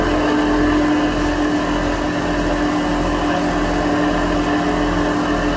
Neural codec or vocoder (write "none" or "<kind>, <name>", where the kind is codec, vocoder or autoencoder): none